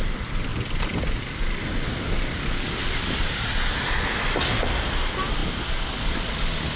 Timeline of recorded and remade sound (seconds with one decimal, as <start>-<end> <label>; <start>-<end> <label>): 0.0-6.8 recorded